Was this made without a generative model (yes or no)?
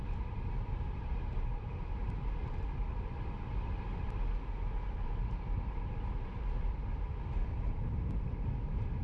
yes